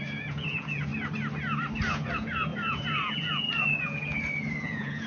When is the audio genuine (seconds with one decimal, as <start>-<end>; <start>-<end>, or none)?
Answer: 0.9-1.9